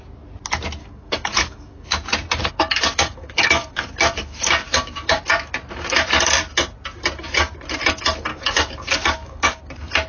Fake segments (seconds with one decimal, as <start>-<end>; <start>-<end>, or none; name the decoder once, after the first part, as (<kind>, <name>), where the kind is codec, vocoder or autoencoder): 0.8-1.9 (codec, DAC); 2.4-3.8; 4.2-5.2; 8.3-9.6